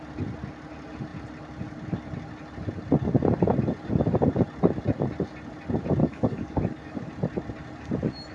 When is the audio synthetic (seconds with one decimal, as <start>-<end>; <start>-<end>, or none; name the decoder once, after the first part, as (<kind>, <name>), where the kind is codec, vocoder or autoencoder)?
6.0-7.1 (codec, DAC)